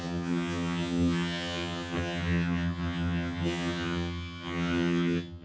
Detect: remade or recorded remade